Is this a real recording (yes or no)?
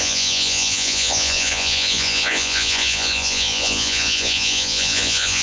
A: no